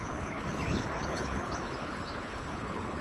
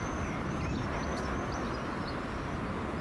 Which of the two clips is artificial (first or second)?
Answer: first